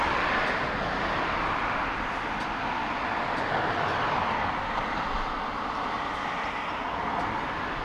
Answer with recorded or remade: recorded